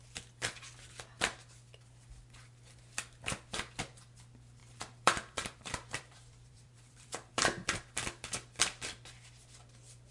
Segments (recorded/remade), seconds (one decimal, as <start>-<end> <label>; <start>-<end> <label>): 0.0-4.6 recorded; 4.6-7.3 remade; 7.3-10.1 recorded